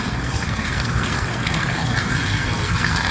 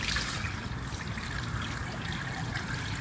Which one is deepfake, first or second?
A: first